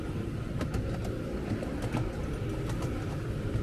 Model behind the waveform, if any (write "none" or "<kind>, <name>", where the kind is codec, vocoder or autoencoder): none